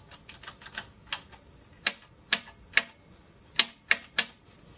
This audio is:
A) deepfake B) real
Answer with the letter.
B